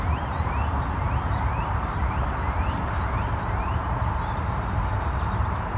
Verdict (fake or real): fake